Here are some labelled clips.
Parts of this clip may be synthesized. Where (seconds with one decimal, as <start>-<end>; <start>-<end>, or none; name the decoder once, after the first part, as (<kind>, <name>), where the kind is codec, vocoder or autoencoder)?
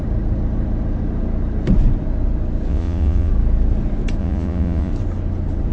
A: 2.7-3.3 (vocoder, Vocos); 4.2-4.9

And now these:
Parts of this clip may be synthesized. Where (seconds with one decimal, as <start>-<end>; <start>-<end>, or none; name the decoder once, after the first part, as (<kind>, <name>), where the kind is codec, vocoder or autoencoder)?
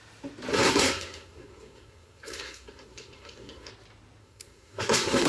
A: 0.5-3.7 (codec, SNAC); 4.2-5.3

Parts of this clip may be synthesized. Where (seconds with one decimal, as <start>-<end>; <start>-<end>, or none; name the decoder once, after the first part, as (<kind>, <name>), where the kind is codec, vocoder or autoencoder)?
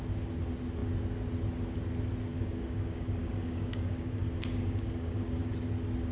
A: 2.3-5.4 (codec, DAC)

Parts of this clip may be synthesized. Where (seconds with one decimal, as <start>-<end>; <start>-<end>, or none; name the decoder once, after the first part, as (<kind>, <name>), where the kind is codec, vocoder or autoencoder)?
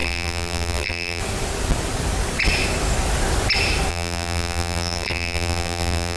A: 0.0-1.2 (vocoder, BigVGAN v2); 3.9-6.2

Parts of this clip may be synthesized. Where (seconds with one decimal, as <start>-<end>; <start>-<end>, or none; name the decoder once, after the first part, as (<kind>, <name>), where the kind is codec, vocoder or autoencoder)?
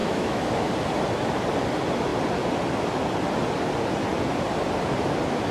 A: 0.0-0.7 (autoencoder, DAC-VAE)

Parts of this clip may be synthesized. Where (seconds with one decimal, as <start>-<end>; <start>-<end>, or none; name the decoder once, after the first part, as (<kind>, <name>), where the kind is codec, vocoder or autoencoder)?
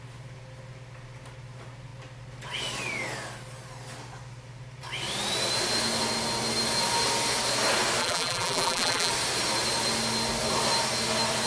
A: 8.0-9.1 (vocoder, BigVGAN v2)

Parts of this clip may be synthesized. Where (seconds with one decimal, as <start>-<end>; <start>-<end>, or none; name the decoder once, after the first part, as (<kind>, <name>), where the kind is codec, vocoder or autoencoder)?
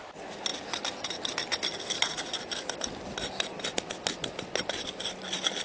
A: none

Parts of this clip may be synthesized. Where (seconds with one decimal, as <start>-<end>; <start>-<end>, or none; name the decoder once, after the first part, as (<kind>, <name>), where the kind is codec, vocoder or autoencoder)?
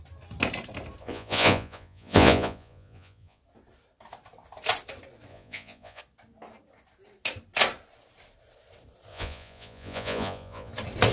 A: 1.0-3.4 (vocoder, Vocos); 5.3-6.0; 9.1-10.7